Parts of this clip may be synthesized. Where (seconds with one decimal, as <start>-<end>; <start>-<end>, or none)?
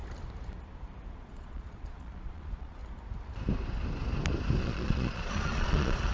1.1-2.8; 4.6-6.1